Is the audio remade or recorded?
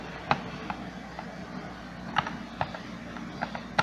recorded